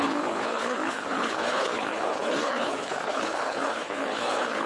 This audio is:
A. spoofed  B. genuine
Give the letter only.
A